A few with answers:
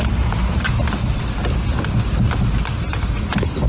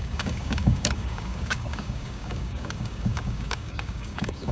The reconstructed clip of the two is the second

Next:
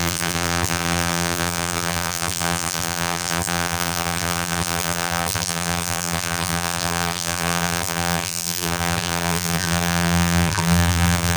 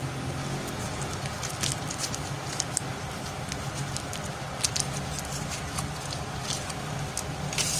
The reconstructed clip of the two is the first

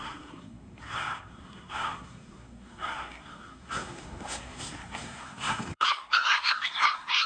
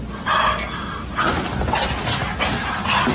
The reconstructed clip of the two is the first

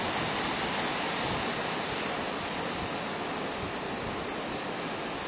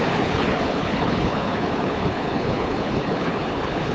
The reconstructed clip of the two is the second